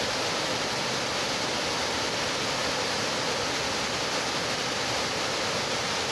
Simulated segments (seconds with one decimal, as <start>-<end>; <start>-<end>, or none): none